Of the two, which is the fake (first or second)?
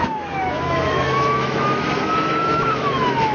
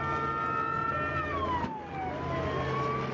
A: first